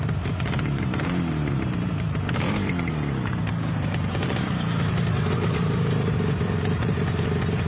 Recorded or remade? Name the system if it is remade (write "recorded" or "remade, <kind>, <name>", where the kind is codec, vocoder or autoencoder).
remade, vocoder, BigVGAN v2